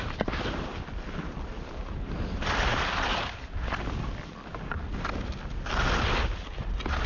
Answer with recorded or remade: recorded